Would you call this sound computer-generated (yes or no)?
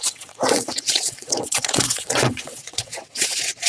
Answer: yes